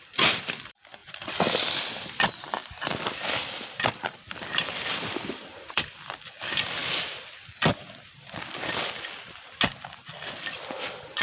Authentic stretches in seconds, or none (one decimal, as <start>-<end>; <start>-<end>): 2.6-3.4; 6.8-10.1